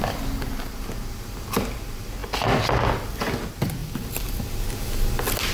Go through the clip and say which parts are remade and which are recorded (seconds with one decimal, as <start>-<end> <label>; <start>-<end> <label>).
0.0-5.5 recorded